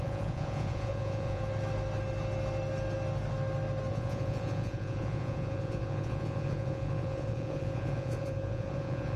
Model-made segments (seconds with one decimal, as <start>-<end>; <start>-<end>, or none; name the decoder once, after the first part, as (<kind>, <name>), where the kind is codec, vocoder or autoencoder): 0.0-1.4 (vocoder, Vocos); 3.9-9.2